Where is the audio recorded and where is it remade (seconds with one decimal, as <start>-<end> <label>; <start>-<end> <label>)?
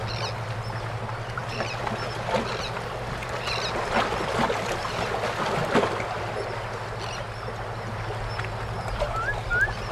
0.0-9.9 recorded